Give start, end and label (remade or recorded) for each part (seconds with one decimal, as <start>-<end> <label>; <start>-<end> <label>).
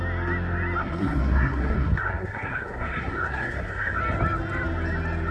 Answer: 0.0-0.8 recorded; 0.8-4.0 remade; 4.0-5.3 recorded